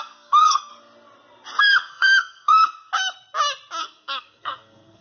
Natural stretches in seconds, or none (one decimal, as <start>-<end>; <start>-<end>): 0.7-1.6; 2.6-3.8